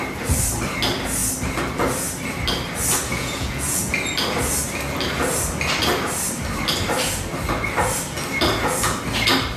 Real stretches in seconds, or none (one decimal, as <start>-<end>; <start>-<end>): 0.0-3.1; 3.9-9.6